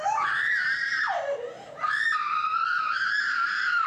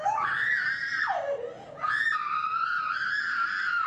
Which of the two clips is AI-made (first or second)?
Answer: first